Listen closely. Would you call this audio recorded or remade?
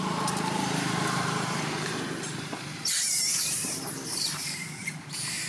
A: remade